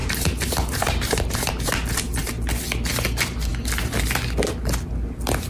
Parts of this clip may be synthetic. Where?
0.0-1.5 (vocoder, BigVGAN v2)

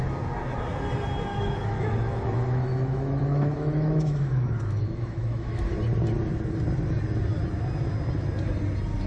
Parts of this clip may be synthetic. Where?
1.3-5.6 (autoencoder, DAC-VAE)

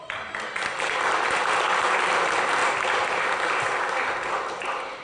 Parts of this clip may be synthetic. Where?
none